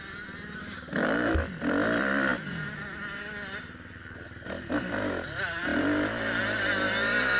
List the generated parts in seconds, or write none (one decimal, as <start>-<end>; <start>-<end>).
0.6-1.3